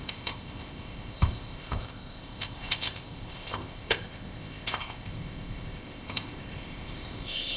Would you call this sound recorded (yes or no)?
no